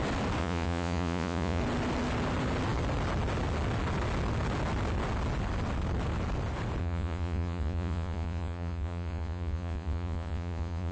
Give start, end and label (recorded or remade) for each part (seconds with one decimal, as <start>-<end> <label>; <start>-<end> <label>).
0.0-0.4 recorded; 0.4-1.6 remade; 1.6-6.8 recorded; 6.8-10.9 remade